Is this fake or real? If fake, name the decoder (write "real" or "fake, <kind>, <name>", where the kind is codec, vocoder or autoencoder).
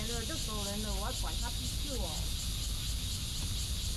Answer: real